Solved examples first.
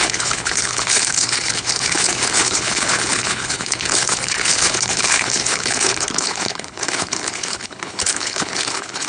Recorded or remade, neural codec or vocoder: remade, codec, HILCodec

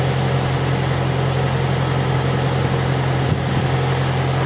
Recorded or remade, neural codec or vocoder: recorded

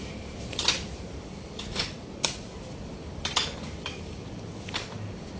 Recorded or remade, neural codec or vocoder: remade, vocoder, BigVGAN v2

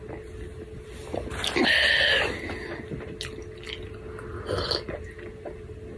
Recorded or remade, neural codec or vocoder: recorded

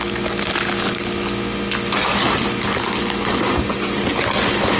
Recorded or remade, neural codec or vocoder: recorded